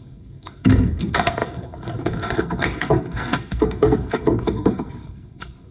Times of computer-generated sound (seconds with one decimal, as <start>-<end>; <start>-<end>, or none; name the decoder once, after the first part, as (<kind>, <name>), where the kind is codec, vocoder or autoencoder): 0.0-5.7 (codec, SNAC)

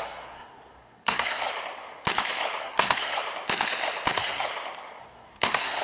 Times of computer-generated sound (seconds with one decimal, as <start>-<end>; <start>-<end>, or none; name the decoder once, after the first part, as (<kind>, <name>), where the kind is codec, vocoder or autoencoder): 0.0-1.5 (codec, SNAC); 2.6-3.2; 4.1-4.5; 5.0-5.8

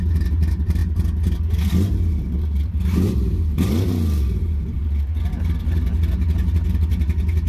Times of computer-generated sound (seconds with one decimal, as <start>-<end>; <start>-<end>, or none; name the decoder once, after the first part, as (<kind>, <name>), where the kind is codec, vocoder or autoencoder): none